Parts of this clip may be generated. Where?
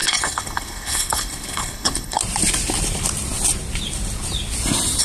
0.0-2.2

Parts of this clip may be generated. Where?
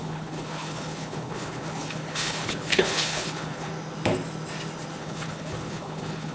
0.0-3.7; 5.0-6.3